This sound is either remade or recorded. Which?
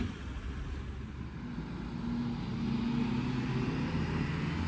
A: recorded